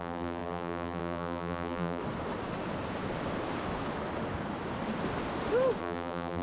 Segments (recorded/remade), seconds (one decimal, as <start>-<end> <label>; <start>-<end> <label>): 0.0-2.0 remade; 2.0-5.8 recorded; 5.8-6.4 remade